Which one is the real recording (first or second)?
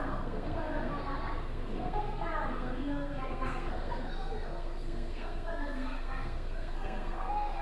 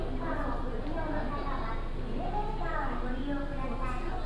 second